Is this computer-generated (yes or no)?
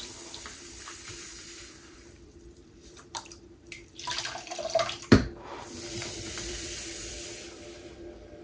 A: yes